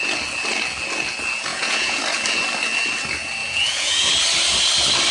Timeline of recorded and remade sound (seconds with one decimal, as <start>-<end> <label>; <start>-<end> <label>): 0.0-1.5 recorded; 1.5-2.0 remade; 2.0-3.4 recorded; 3.4-4.1 remade; 4.1-5.1 recorded

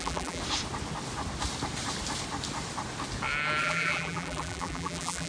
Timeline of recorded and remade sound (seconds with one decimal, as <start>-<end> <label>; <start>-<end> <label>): 0.0-0.4 remade; 0.4-3.6 recorded; 3.6-5.3 remade

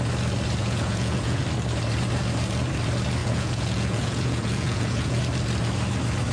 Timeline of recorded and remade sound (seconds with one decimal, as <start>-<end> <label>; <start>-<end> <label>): 0.0-0.6 recorded; 0.6-1.4 remade; 1.4-3.2 recorded; 3.2-5.2 remade; 5.2-6.3 recorded